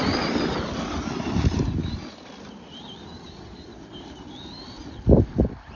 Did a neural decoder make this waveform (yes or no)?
yes